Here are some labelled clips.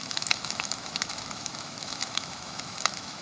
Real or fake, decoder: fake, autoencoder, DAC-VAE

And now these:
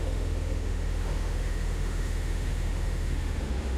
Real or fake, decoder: fake, autoencoder, DAC-VAE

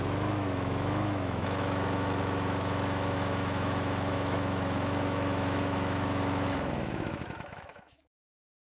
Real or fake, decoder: fake, autoencoder, DAC-VAE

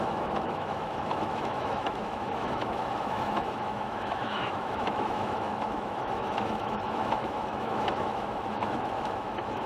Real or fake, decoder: fake, autoencoder, DAC-VAE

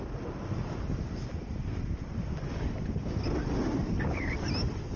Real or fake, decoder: real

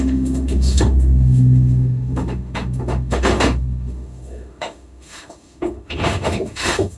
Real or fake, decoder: fake, autoencoder, DAC-VAE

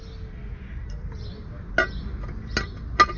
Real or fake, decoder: real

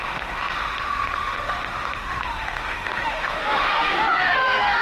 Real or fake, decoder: fake, autoencoder, DAC-VAE